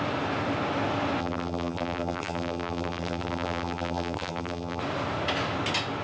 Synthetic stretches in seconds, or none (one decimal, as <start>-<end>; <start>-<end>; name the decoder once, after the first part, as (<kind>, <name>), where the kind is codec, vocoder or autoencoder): 1.2-4.8 (vocoder, BigVGAN v2)